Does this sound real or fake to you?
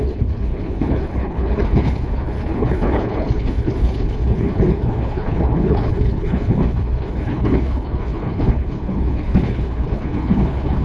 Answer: fake